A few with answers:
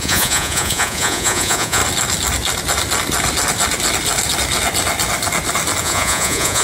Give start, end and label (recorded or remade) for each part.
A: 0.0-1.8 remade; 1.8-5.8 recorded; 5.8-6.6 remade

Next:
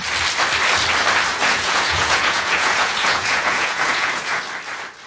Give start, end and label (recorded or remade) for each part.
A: 0.0-1.3 recorded; 1.3-4.4 remade; 4.4-5.1 recorded